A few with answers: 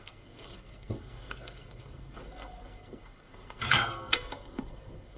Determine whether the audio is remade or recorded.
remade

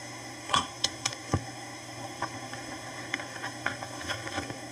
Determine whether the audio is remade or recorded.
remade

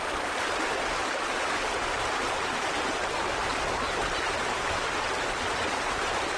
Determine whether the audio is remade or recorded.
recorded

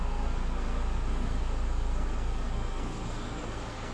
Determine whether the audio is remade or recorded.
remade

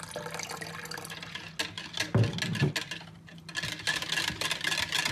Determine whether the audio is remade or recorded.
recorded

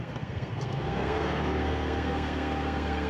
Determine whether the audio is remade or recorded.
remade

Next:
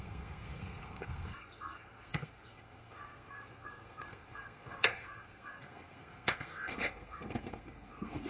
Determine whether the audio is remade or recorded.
remade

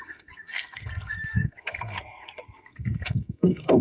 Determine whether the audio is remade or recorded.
remade